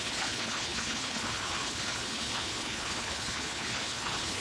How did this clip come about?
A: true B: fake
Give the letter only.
B